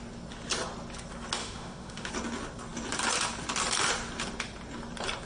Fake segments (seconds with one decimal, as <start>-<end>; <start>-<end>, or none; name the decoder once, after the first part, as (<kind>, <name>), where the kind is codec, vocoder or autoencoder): 1.4-2.1 (autoencoder, DAC-VAE)

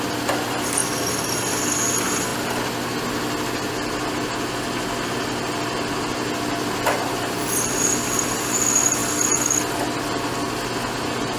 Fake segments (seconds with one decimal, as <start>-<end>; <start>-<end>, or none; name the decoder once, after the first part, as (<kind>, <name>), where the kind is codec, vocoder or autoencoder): none

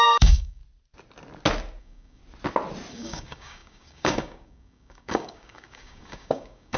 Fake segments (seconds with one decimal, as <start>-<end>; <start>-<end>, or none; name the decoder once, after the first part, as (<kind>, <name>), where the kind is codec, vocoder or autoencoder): 0.0-0.6 (codec, DAC); 1.8-2.2; 2.9-6.8

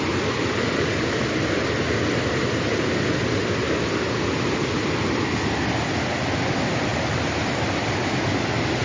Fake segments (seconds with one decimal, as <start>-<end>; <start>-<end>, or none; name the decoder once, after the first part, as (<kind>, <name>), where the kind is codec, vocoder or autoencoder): none

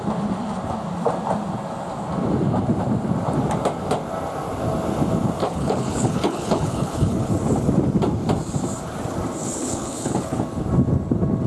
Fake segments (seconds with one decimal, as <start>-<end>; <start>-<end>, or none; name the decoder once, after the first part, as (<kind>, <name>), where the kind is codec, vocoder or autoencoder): 5.4-7.3 (codec, HILCodec); 9.4-10.4